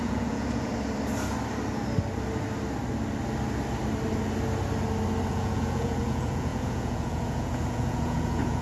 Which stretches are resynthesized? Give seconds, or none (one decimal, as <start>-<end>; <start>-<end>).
0.0-0.7; 5.3-8.6